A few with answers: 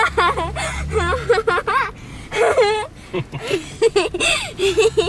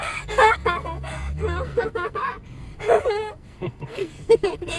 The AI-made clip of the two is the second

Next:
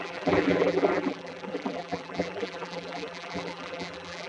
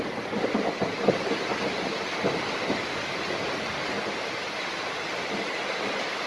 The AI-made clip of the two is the first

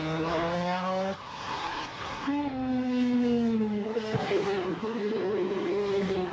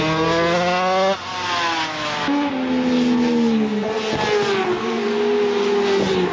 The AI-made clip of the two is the first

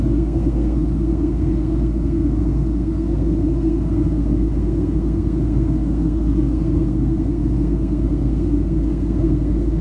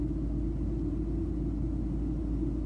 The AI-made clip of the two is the first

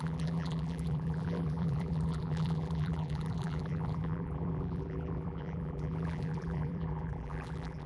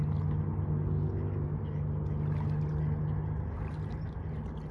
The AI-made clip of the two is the first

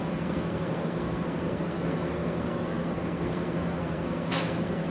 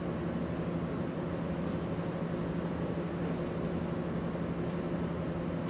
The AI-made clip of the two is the first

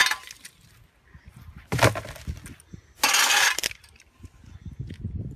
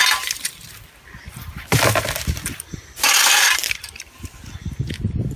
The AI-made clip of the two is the second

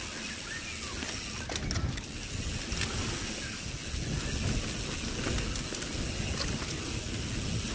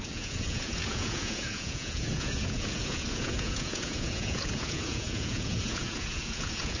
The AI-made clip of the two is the second